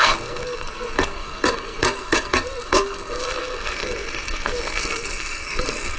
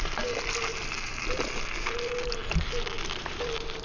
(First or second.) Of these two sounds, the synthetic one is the first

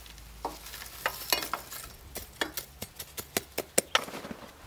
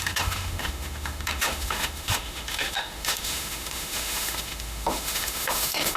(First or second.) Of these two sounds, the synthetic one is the second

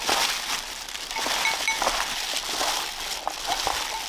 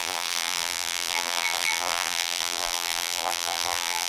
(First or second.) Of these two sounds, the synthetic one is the second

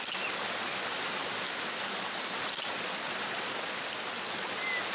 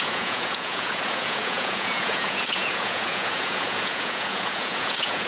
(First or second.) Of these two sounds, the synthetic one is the second